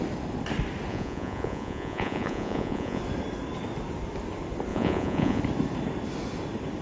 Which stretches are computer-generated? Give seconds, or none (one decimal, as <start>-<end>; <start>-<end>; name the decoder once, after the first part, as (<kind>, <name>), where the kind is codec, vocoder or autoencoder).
0.9-3.0 (vocoder, Vocos); 4.7-5.4